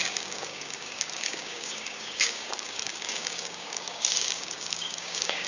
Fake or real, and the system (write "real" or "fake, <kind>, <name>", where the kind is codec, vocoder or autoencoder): fake, codec, DAC